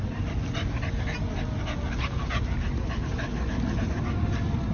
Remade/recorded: recorded